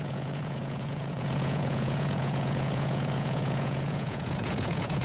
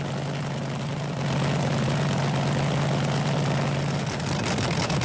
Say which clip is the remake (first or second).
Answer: first